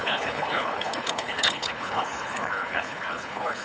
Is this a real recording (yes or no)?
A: no